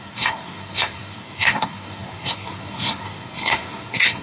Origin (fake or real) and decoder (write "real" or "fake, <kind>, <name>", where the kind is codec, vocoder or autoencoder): fake, codec, SNAC